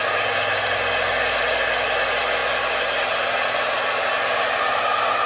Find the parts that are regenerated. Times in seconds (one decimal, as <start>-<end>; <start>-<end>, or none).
none